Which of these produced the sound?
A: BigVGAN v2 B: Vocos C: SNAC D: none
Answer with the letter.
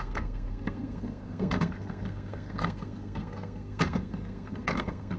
C